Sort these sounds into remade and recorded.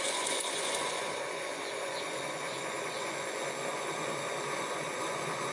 remade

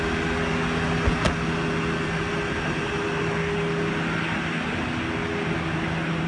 recorded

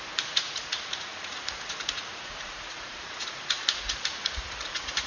remade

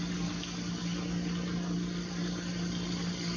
recorded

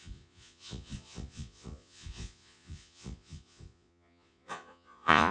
remade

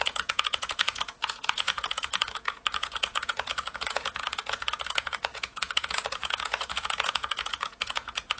remade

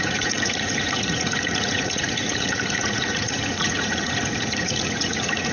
remade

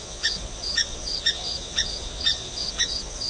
remade